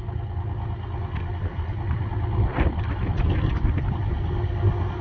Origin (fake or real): real